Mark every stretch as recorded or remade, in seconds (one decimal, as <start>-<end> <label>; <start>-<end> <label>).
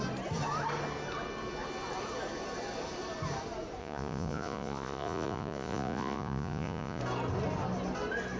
0.0-3.8 recorded; 3.8-7.0 remade; 7.0-8.4 recorded